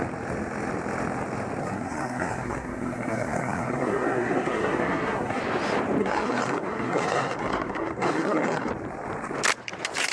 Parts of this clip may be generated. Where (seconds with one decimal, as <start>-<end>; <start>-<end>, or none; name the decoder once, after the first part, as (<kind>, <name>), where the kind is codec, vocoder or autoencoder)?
1.6-5.4 (codec, SNAC); 6.0-8.7